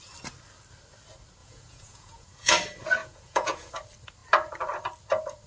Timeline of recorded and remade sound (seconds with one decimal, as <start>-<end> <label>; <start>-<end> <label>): 0.0-1.4 recorded; 1.4-2.5 remade; 2.5-3.0 recorded; 3.0-3.7 remade; 3.7-5.5 recorded